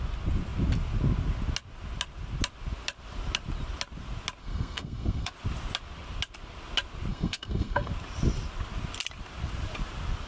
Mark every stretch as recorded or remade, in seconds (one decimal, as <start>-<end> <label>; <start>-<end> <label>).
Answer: 0.0-4.4 recorded; 4.4-5.3 remade; 5.3-7.1 recorded; 7.1-7.9 remade; 7.9-10.3 recorded